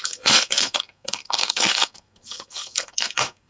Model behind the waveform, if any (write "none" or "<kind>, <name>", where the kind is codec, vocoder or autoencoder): codec, SNAC